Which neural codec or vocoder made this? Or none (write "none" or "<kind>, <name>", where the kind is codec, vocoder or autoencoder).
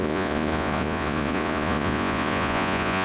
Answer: vocoder, Vocos